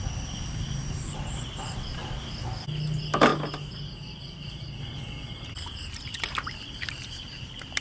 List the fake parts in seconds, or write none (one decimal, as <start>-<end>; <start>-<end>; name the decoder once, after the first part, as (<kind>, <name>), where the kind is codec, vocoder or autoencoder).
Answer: 0.8-1.8 (vocoder, BigVGAN v2); 6.1-7.8